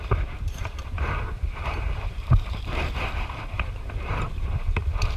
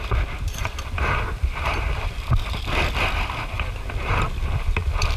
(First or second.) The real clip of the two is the second